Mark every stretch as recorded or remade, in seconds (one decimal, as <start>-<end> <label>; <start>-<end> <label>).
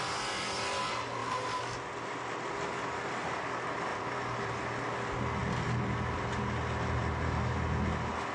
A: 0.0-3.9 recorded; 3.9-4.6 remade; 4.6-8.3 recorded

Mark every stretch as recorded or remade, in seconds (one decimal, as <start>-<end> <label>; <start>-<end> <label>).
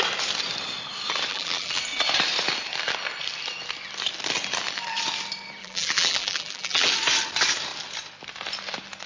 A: 0.0-1.3 recorded; 1.3-1.8 remade; 1.8-5.6 recorded; 5.6-6.9 remade; 6.9-9.1 recorded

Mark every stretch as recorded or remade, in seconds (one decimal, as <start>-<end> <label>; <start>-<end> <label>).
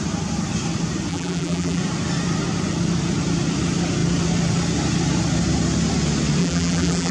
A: 0.0-1.1 recorded; 1.1-1.8 remade; 1.8-6.4 recorded; 6.4-7.1 remade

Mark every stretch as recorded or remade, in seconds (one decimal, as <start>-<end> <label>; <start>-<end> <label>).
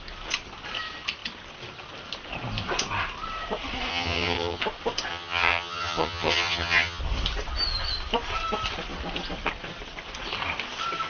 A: 0.0-3.9 recorded; 3.9-4.6 remade; 4.6-5.1 recorded; 5.1-7.0 remade; 7.0-11.1 recorded